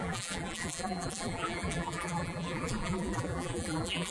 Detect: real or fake fake